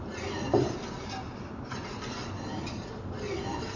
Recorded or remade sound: recorded